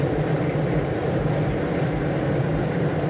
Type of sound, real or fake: real